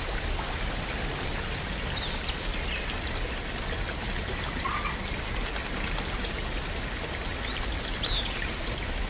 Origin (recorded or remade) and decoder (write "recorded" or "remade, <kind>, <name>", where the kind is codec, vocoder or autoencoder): recorded